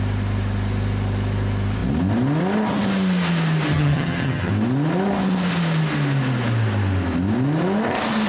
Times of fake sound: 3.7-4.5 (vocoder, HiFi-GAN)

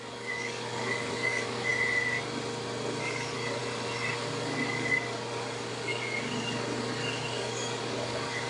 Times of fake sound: 0.0-1.7 (codec, DAC); 3.0-3.6; 4.1-8.5

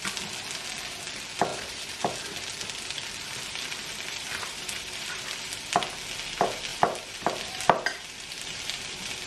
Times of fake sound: 1.5-5.3 (vocoder, BigVGAN v2); 6.7-9.3